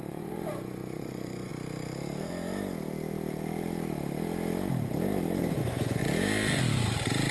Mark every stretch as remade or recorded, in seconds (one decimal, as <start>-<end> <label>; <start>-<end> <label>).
0.0-1.5 remade; 1.5-5.4 recorded; 5.4-6.0 remade; 6.0-7.3 recorded